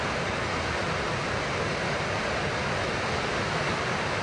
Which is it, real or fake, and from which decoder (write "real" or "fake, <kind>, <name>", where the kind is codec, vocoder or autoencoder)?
real